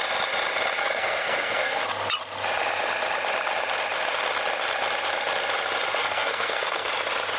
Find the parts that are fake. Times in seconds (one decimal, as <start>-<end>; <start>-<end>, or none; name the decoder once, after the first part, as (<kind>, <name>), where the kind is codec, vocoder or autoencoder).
0.8-1.8 (codec, SNAC); 6.0-6.9